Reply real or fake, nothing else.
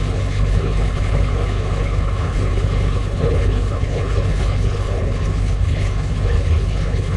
fake